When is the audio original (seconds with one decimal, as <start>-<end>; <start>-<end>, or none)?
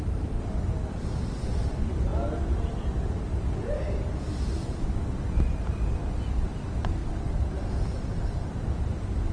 0.0-7.0; 8.5-9.3